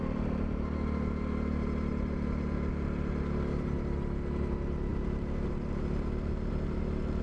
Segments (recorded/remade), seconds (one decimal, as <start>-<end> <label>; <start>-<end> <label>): 0.0-7.2 recorded